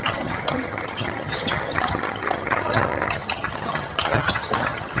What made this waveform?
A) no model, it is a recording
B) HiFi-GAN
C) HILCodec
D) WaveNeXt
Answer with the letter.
B